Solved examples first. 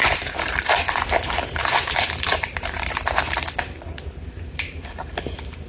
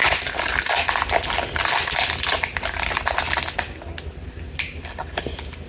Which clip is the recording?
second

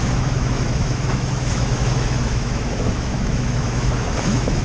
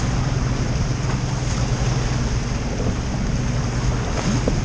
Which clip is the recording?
second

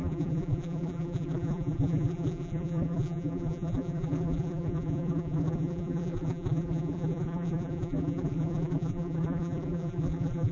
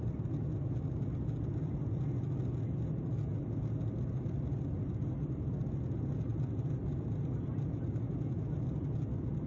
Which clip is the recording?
second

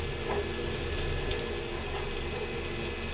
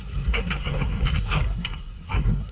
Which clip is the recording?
first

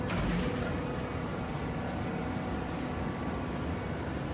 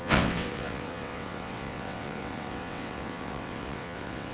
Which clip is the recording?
first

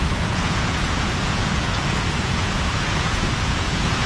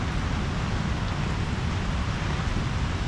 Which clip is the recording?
second